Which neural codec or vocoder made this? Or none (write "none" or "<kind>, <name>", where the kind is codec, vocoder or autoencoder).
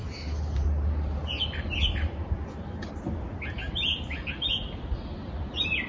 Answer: none